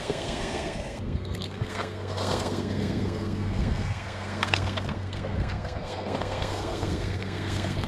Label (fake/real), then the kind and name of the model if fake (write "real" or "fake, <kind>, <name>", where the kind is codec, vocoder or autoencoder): fake, codec, SNAC